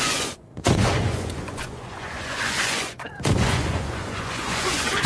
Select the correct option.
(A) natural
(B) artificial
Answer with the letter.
B